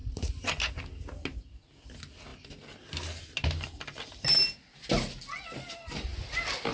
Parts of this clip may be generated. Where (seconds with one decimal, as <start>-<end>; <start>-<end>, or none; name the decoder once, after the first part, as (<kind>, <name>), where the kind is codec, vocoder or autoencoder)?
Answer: none